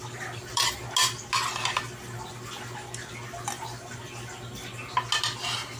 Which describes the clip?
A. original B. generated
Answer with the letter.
A